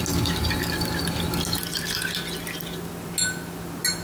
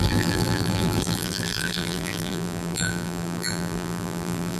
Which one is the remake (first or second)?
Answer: second